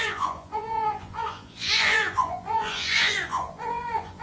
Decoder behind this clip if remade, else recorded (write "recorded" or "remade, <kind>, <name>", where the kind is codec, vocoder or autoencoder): remade, vocoder, Vocos